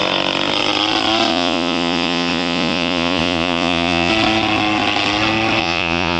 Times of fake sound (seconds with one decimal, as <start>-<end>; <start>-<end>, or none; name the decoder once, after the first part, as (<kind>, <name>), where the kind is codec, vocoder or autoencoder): 1.3-4.1 (vocoder, Vocos); 5.6-6.2